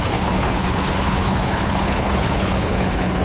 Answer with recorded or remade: remade